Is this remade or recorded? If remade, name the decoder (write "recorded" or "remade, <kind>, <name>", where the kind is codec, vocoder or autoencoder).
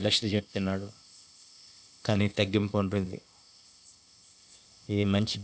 remade, codec, ZipCodec